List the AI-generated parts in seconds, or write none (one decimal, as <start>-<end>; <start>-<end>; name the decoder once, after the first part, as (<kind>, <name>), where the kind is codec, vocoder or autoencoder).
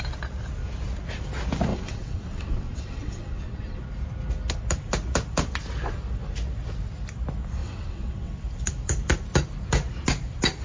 1.7-3.8 (vocoder, WaveNeXt); 7.6-8.3